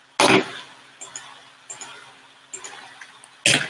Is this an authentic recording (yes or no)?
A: yes